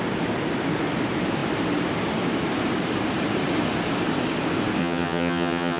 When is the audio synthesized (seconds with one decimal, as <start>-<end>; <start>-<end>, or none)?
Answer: 4.8-5.8